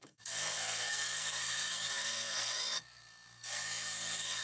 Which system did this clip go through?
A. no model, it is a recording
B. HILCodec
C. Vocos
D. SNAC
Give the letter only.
D